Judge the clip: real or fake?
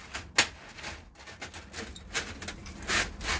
real